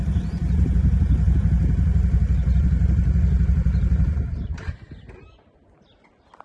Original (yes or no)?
yes